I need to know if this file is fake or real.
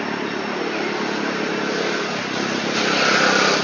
real